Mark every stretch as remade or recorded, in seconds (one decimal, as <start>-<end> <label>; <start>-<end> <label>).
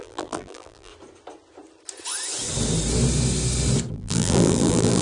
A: 0.0-0.9 remade; 0.9-3.9 recorded; 3.9-5.0 remade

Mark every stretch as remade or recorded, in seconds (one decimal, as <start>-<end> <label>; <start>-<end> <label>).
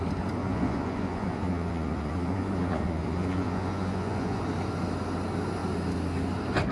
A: 0.0-0.4 recorded; 0.4-4.4 remade; 4.4-6.7 recorded